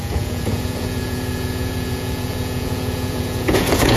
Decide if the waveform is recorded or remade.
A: remade